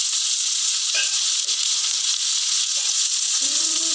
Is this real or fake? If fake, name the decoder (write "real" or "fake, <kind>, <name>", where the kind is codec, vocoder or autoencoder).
fake, vocoder, Vocos